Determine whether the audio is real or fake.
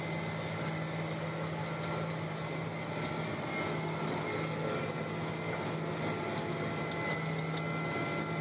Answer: real